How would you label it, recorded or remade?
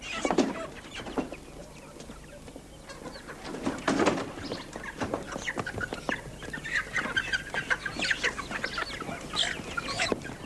recorded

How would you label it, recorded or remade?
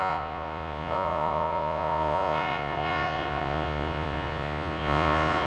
remade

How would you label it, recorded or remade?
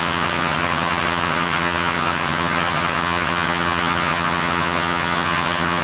remade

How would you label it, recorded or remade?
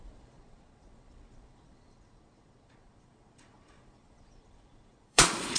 remade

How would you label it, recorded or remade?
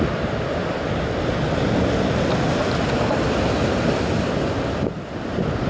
recorded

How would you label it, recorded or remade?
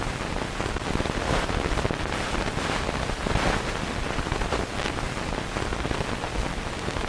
recorded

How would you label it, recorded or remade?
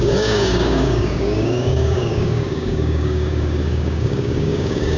remade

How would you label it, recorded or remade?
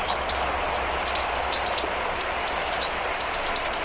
recorded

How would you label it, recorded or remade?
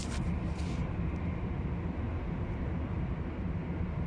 recorded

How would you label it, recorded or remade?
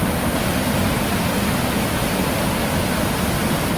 recorded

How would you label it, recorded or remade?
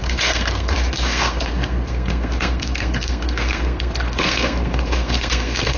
remade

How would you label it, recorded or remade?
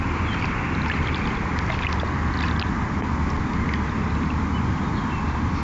recorded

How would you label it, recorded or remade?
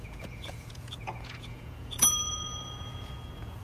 remade